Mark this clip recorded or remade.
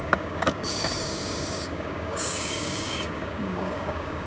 remade